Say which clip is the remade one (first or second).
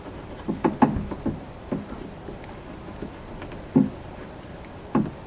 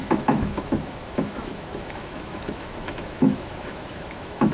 second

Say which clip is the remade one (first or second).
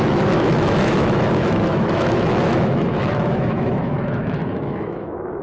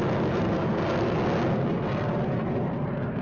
first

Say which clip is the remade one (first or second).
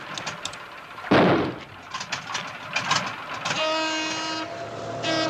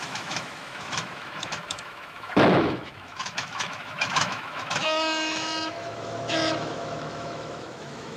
second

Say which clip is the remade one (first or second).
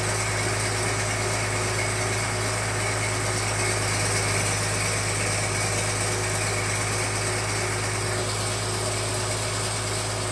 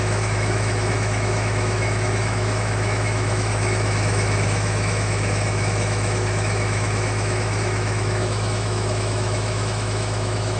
second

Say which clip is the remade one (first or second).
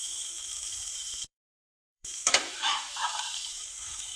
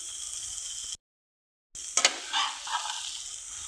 first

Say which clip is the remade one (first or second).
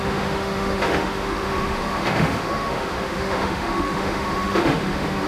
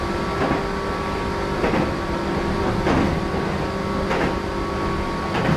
first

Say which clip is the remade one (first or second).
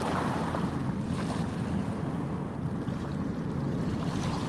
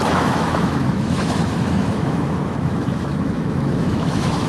second